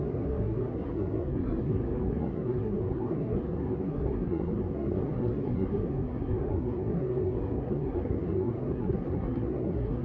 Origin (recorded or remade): remade